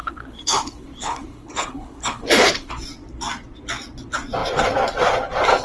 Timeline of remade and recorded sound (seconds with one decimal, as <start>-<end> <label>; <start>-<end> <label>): 0.0-2.7 remade; 2.7-5.6 recorded